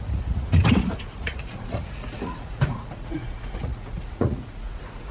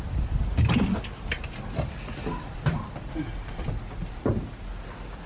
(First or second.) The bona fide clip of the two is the second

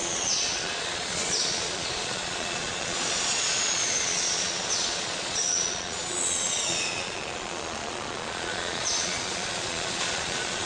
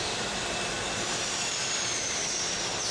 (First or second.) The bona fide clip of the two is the second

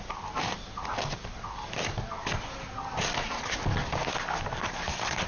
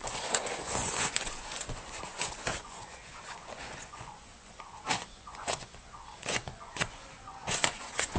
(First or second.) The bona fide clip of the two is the first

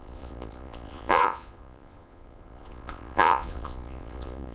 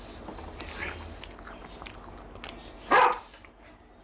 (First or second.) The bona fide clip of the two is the second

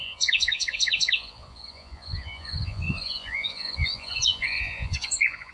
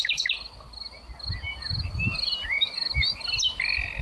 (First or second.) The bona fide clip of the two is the second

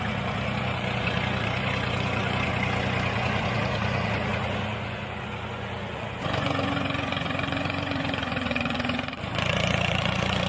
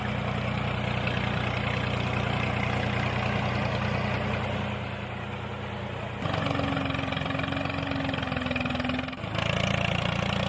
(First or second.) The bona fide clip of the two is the second